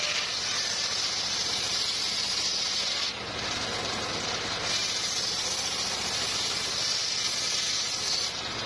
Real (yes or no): yes